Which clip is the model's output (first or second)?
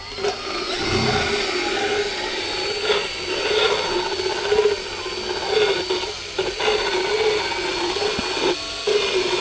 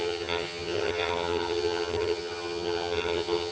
second